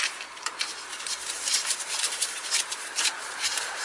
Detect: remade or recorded remade